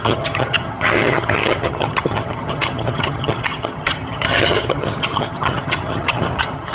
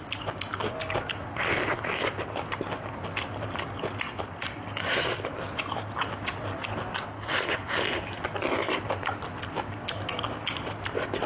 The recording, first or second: second